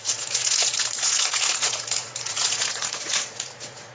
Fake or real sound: fake